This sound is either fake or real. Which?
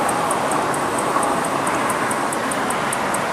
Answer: real